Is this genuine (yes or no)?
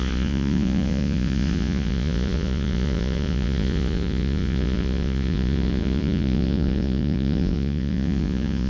no